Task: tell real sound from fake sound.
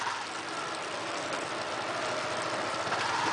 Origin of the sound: real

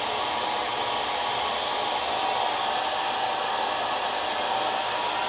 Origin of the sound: fake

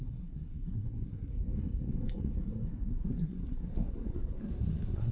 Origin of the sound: fake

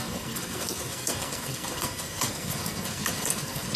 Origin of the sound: fake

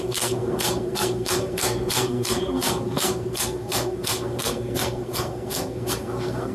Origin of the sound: fake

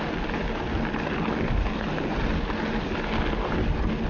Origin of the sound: real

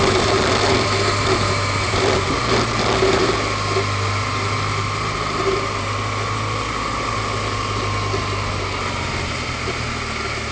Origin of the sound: fake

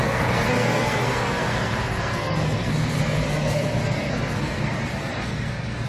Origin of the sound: fake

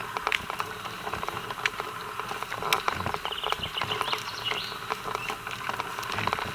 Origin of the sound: real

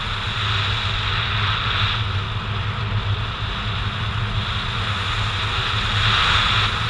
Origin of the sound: real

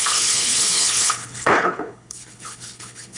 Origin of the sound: fake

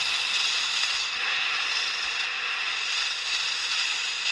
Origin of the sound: real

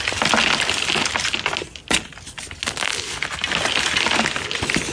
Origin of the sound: real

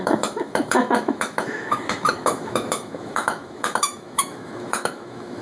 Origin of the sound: fake